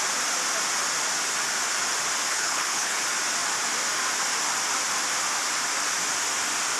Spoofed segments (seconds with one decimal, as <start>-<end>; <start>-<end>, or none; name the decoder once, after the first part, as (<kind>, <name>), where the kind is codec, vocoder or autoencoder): 2.3-3.0 (codec, HILCodec)